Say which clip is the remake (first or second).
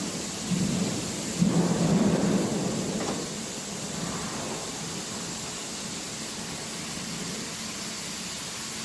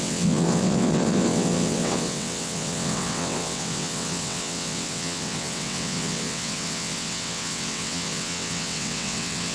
second